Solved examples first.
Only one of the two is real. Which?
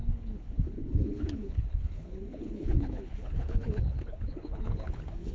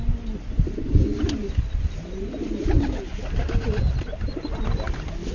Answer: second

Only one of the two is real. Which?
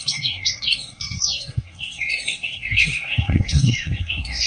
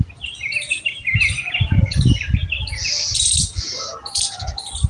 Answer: second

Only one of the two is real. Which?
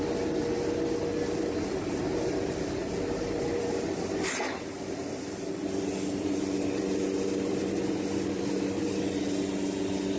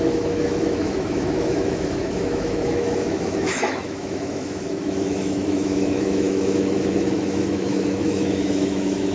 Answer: first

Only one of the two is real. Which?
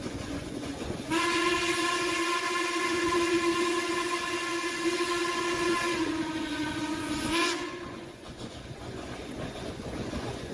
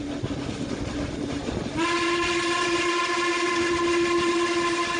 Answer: second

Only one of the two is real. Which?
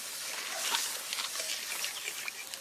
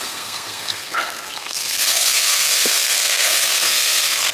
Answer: first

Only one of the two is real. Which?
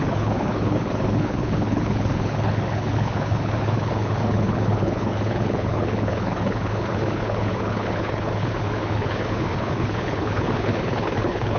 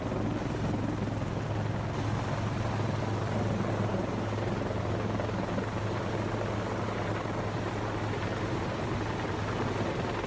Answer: second